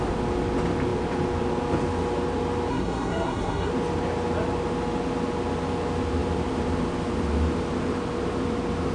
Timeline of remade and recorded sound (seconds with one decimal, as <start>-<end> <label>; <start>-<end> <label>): 0.0-2.7 recorded; 2.7-3.7 remade; 3.7-8.9 recorded